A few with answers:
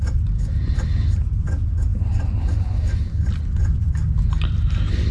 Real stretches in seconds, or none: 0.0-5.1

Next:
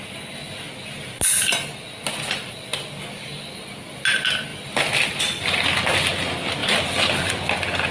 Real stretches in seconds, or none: 0.0-7.9